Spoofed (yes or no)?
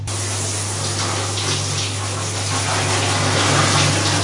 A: no